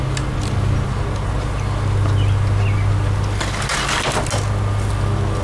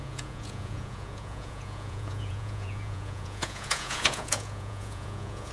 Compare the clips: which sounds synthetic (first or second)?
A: second